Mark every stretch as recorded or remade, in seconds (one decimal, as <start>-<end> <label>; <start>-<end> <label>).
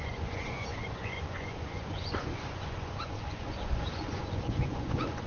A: 0.0-5.3 remade